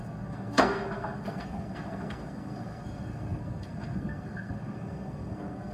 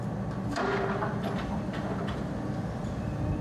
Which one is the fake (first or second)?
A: first